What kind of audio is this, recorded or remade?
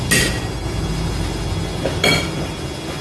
recorded